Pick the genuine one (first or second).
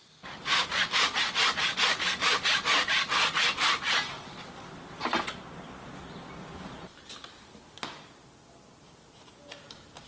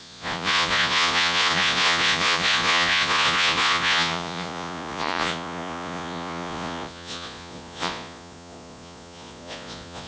first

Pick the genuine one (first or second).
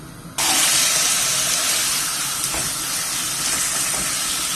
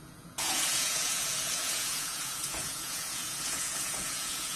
first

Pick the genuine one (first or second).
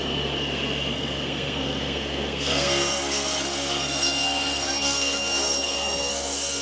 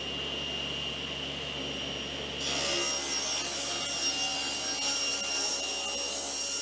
second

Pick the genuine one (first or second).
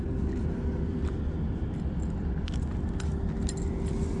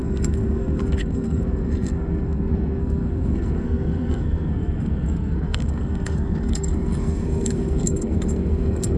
first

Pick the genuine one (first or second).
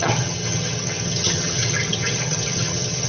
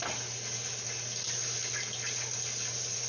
second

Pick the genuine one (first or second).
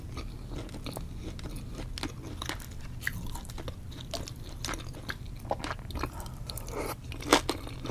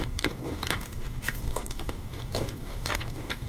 first